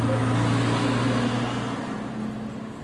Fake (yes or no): no